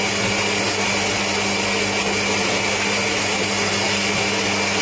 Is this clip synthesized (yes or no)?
no